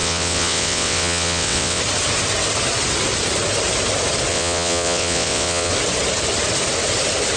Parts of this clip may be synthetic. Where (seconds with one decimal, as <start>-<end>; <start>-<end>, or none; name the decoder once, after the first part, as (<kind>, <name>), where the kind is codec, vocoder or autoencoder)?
0.0-1.8 (vocoder, WaveNeXt); 4.3-5.7